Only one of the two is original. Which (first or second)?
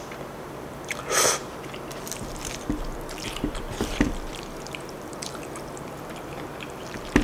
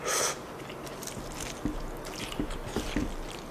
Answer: second